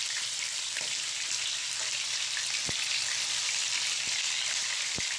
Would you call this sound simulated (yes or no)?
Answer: no